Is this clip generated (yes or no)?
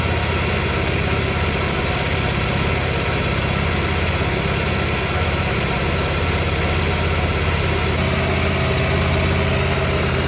no